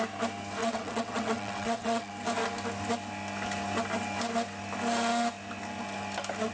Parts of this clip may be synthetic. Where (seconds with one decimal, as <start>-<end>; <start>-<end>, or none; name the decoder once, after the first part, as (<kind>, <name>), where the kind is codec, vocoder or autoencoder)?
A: 0.6-2.1 (vocoder, WaveNeXt)